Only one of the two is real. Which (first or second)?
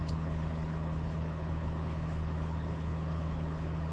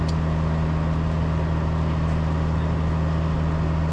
second